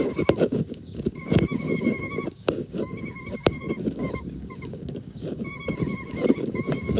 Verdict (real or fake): fake